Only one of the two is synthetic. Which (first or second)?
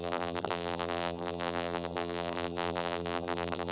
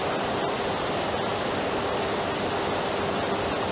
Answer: first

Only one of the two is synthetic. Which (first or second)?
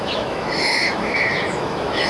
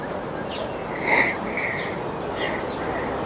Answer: first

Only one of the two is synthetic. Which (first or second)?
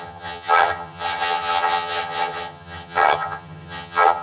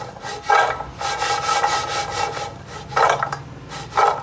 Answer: first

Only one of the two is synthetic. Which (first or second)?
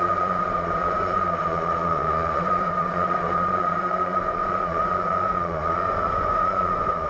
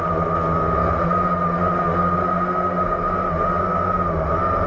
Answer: first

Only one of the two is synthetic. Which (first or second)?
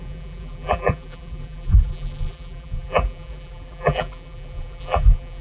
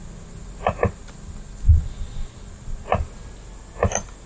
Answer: first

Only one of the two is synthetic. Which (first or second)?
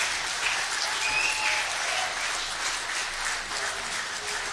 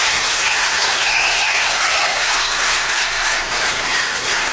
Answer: second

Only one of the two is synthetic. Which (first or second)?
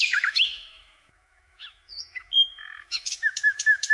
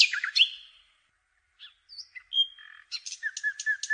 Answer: first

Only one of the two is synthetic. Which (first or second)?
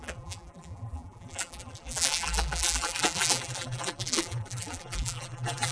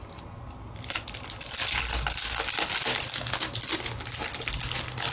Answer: first